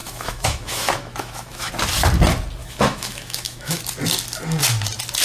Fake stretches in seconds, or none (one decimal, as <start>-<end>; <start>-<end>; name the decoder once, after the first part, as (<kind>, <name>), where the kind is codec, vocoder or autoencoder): 0.0-1.7 (autoencoder, DAC-VAE); 2.6-3.8